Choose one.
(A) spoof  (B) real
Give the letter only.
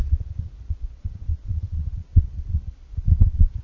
A